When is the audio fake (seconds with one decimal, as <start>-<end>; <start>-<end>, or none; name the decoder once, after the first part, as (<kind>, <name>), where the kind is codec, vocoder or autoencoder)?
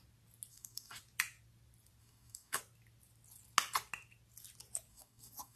0.5-1.0 (codec, DAC); 2.0-2.6; 4.9-5.6